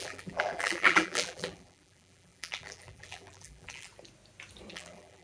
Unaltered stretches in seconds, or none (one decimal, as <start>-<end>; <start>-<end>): 3.9-4.7